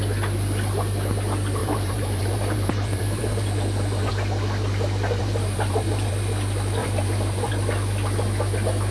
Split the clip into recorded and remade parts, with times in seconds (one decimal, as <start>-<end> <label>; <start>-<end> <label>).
0.0-1.6 recorded; 1.6-4.1 remade; 4.1-5.2 recorded; 5.2-6.1 remade; 6.1-6.8 recorded; 6.8-7.5 remade; 7.5-8.9 recorded